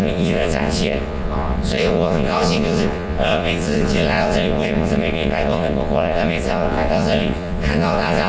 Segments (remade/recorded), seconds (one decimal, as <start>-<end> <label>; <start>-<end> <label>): 0.0-8.3 remade